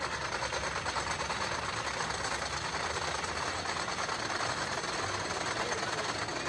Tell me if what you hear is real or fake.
real